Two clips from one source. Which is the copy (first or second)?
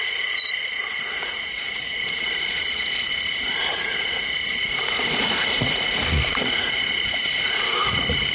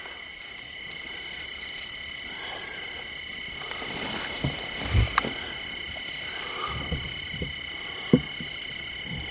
first